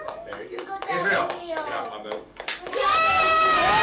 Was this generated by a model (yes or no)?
yes